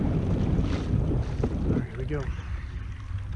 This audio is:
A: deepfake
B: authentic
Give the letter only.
B